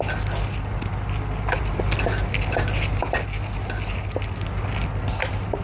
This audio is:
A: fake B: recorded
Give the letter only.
B